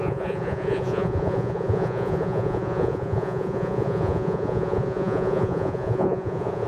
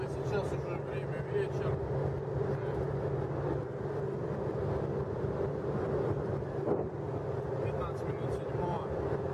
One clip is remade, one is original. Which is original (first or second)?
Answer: second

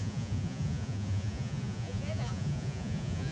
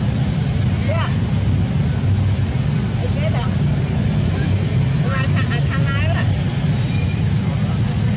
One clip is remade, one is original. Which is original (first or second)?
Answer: second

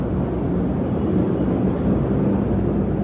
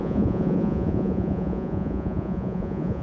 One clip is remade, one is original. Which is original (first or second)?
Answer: first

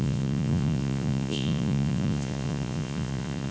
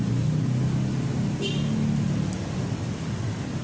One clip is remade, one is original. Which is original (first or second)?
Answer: second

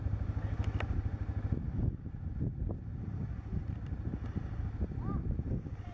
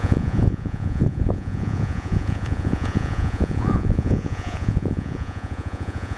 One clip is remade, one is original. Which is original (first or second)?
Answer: first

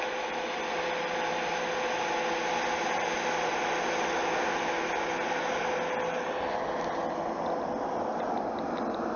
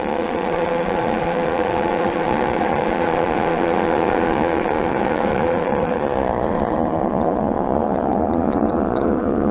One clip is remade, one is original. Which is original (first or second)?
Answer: first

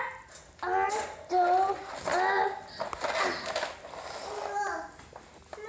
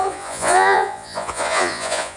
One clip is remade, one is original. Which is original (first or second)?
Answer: first